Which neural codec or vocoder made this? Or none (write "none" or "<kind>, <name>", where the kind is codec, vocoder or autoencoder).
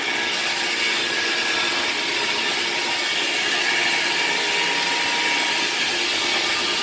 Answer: none